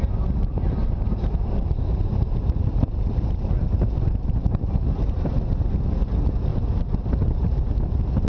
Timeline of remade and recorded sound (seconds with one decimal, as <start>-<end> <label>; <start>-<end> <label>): 0.0-0.8 recorded; 0.8-5.3 remade; 5.3-6.5 recorded; 6.5-7.6 remade; 7.6-8.3 recorded